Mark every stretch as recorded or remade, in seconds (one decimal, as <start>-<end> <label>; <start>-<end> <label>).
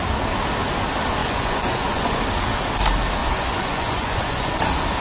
0.0-1.2 recorded; 1.2-2.2 remade; 2.2-3.2 recorded; 3.2-4.5 remade; 4.5-5.0 recorded